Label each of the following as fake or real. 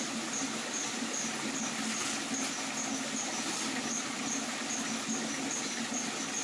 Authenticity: real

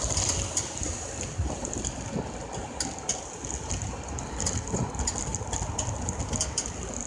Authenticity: real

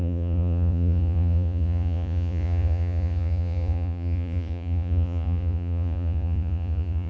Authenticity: fake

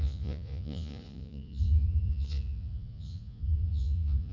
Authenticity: fake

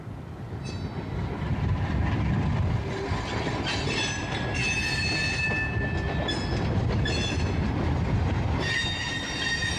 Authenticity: real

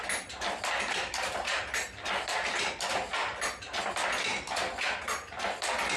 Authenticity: real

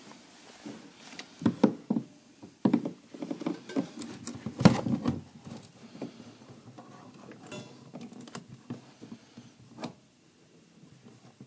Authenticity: real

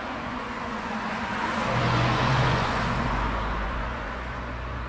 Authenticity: fake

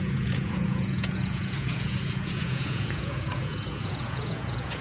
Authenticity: fake